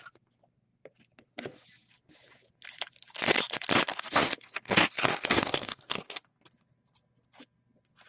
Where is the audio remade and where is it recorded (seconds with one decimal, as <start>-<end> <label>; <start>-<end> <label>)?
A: 0.0-3.9 recorded; 3.9-6.4 remade; 6.4-8.1 recorded